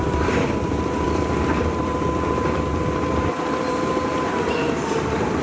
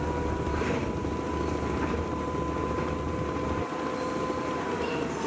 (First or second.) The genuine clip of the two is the second